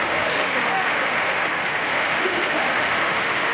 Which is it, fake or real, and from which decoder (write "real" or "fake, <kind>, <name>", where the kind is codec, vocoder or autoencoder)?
fake, autoencoder, DAC-VAE